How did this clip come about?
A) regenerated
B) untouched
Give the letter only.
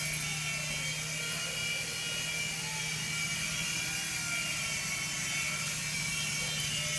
B